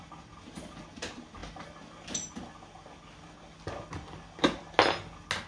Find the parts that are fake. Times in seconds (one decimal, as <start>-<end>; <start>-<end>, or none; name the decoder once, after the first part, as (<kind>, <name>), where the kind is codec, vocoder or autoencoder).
none